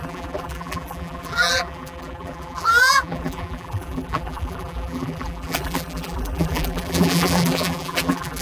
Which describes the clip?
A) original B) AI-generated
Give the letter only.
B